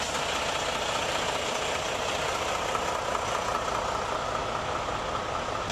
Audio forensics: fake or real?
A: real